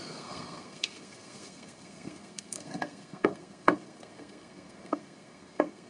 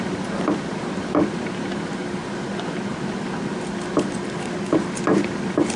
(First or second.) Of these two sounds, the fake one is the first